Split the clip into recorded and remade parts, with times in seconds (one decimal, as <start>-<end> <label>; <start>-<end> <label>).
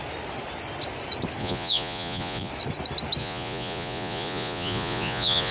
0.0-1.4 recorded; 1.4-2.5 remade; 2.5-3.2 recorded; 3.2-5.5 remade